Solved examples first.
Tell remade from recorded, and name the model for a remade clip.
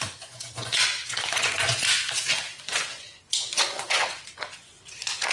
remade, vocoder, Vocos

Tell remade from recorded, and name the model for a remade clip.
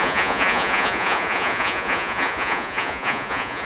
remade, vocoder, Vocos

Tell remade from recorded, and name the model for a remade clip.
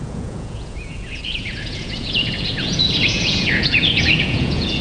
remade, vocoder, Vocos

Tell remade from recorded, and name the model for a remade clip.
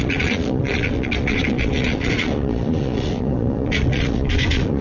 remade, vocoder, Vocos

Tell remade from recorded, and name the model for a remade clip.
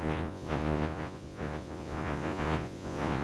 remade, vocoder, Vocos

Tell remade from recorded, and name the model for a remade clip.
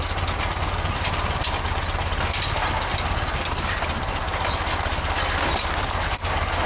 recorded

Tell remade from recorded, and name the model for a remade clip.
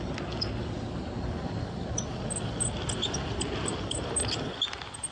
recorded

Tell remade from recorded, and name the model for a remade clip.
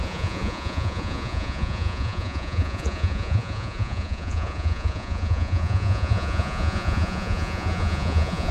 remade, vocoder, Vocos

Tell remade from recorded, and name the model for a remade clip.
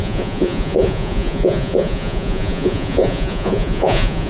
remade, vocoder, Vocos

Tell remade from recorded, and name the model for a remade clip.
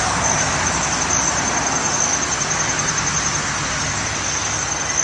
recorded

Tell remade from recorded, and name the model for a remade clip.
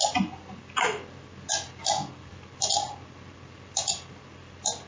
recorded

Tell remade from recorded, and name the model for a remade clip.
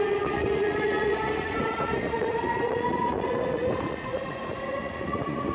remade, vocoder, Vocos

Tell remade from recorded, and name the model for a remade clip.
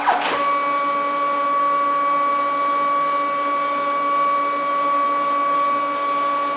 recorded